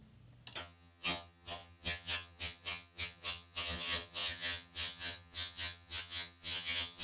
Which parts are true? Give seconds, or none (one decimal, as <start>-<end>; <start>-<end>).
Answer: 0.0-0.6